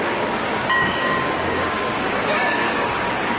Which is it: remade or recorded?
remade